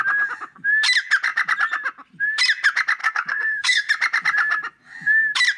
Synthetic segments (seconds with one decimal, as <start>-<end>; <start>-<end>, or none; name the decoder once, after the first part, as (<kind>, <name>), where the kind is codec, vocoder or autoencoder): 3.0-3.9 (codec, SNAC)